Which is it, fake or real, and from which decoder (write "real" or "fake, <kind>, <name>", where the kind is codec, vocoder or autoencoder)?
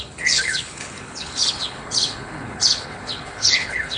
fake, codec, HILCodec